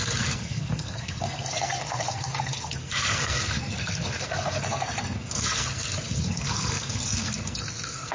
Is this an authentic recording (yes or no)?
no